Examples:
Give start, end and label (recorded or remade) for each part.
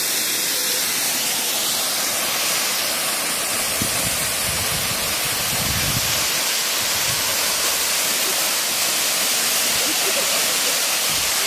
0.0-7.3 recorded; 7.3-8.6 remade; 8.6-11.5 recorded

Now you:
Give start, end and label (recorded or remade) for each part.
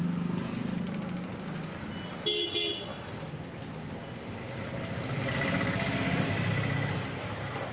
0.0-7.7 recorded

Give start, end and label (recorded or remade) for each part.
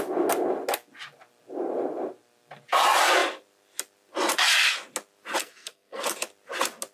0.0-5.4 recorded; 5.4-6.0 remade; 6.0-6.9 recorded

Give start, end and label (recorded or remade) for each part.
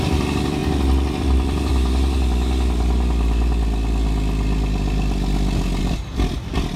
0.0-0.6 remade; 0.6-1.2 recorded; 1.2-1.7 remade; 1.7-5.8 recorded; 5.8-6.8 remade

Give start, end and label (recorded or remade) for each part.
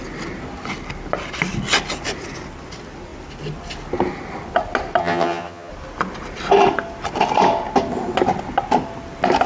0.0-5.0 recorded; 5.0-5.7 remade; 5.7-9.5 recorded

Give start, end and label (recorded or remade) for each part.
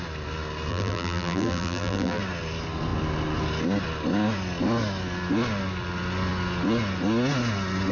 0.0-0.7 recorded; 0.7-2.2 remade; 2.2-7.9 recorded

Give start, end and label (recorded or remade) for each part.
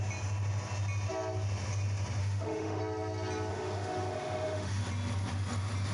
0.0-2.2 recorded; 2.2-2.8 remade; 2.8-3.5 recorded; 3.5-4.8 remade; 4.8-5.9 recorded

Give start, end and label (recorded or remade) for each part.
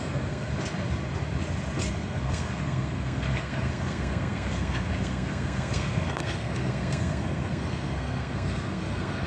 0.0-0.5 remade; 0.5-1.9 recorded; 1.9-9.3 remade